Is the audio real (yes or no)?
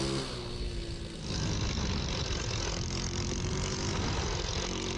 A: yes